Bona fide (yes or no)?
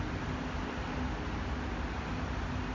yes